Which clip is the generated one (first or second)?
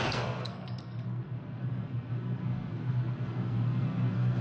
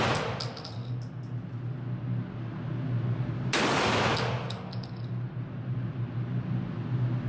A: first